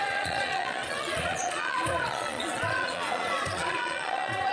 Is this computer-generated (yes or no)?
yes